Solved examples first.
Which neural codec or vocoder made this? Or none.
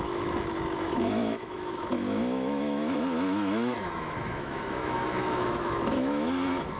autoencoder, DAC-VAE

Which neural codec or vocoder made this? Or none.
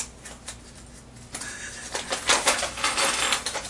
none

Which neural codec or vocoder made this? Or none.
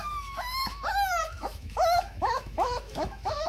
autoencoder, DAC-VAE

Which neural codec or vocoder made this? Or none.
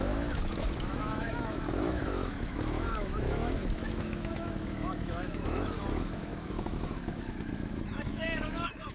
autoencoder, DAC-VAE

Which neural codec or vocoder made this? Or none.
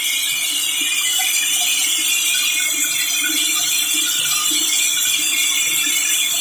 none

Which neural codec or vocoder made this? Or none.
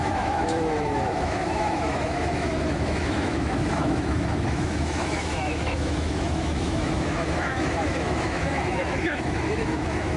autoencoder, DAC-VAE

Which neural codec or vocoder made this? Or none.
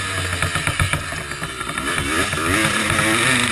none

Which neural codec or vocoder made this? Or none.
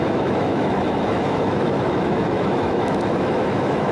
autoencoder, DAC-VAE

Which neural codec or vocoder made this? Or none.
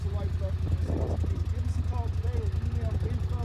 none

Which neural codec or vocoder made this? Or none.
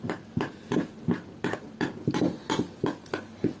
none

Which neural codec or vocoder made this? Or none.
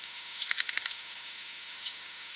autoencoder, DAC-VAE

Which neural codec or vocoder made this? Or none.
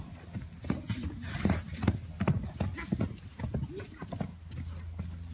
none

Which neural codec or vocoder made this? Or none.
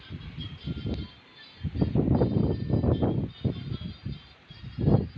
none